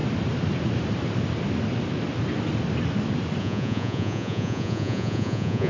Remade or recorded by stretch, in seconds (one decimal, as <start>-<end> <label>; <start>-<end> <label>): 0.0-3.4 recorded; 3.4-5.7 remade